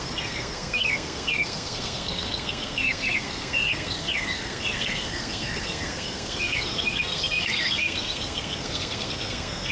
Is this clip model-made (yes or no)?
yes